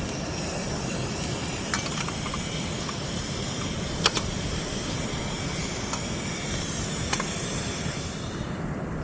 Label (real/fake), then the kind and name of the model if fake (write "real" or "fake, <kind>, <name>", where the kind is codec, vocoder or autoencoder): real